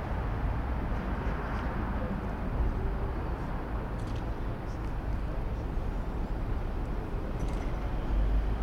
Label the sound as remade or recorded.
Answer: recorded